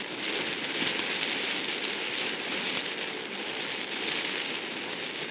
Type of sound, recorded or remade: recorded